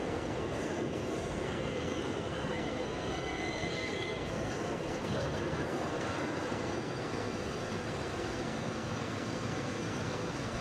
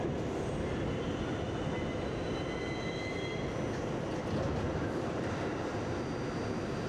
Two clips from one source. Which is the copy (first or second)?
first